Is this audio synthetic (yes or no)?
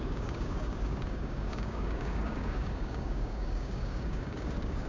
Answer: yes